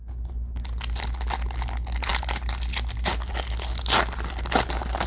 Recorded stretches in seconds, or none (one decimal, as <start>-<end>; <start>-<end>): 0.0-5.1